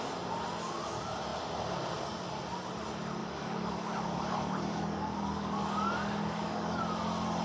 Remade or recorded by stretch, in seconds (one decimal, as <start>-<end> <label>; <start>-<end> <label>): 0.0-3.2 recorded; 3.2-6.8 remade; 6.8-7.4 recorded